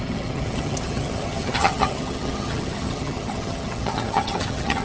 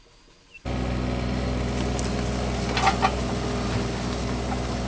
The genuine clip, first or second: second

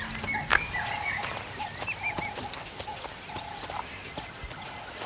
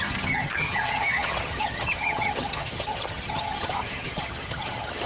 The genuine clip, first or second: first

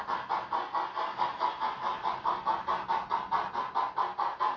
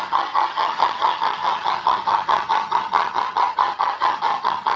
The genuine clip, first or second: first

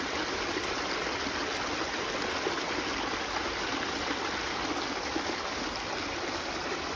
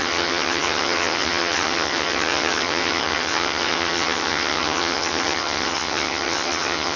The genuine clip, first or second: first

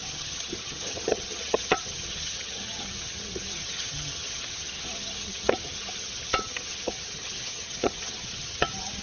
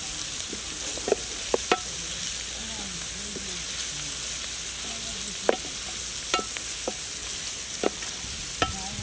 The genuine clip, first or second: second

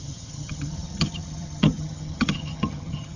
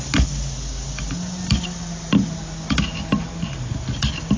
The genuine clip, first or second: second